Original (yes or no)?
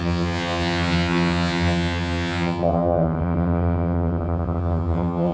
no